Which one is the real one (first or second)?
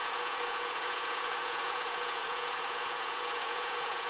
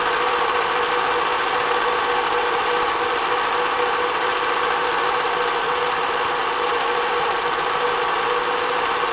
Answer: second